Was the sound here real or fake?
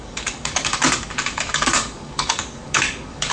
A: fake